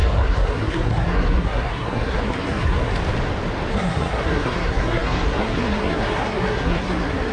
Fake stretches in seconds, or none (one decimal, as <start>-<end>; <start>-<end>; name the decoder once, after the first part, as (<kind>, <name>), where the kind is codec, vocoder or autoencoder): 0.0-2.9 (codec, SNAC); 3.7-7.3